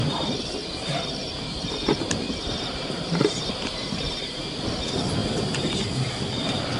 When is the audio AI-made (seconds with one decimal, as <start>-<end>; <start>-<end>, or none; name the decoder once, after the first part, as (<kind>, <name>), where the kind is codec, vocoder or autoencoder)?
1.2-4.4 (vocoder, BigVGAN v2); 5.2-5.9